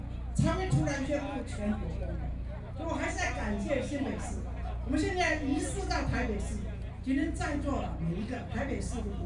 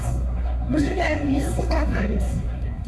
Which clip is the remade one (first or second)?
second